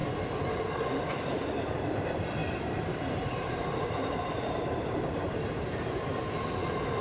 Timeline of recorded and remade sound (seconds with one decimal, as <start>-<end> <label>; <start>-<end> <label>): 0.0-2.4 recorded; 2.4-6.0 remade; 6.0-7.0 recorded